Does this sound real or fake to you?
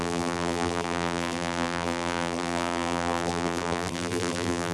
fake